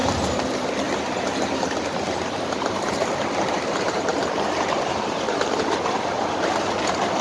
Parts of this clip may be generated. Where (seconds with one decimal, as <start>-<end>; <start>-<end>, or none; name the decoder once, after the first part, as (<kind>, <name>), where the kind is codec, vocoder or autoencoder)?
2.5-7.2 (vocoder, BigVGAN v2)

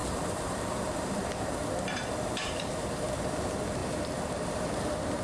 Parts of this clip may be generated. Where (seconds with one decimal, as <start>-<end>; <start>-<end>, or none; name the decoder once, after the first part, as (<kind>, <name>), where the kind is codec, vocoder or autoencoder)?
0.0-5.2 (vocoder, BigVGAN v2)

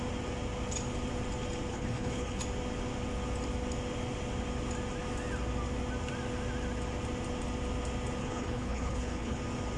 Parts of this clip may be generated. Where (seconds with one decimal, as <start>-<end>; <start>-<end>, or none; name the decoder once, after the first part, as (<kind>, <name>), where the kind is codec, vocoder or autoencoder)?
1.7-2.4 (codec, HILCodec); 8.2-9.4